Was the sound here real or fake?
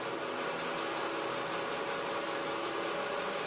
real